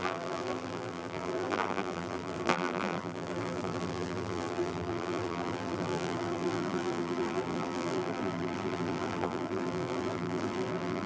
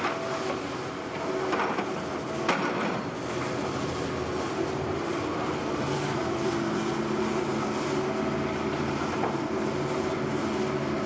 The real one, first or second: second